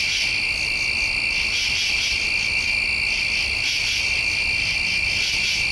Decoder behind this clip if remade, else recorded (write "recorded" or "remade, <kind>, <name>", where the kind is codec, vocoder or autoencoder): recorded